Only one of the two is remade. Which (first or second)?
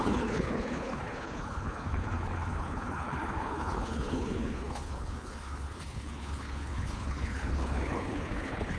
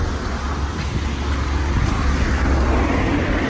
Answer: first